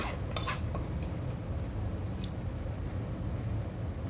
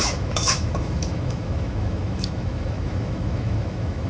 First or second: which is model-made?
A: second